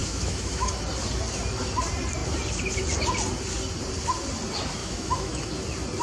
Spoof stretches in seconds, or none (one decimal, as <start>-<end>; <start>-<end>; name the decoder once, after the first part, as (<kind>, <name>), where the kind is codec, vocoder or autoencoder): 0.0-0.7 (autoencoder, DAC-VAE); 4.8-5.5